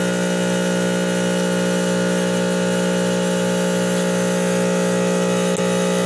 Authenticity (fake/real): real